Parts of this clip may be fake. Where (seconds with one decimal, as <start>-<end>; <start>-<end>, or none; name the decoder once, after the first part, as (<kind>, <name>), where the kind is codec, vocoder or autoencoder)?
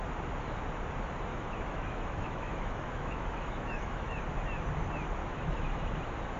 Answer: 1.3-4.2 (autoencoder, DAC-VAE); 5.2-5.9